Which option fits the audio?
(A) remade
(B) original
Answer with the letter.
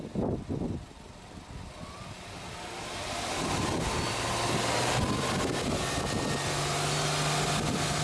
B